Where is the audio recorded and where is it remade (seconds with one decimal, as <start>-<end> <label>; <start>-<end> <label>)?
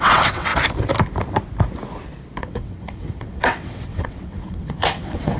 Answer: 0.0-0.5 remade; 0.5-2.4 recorded; 2.4-5.4 remade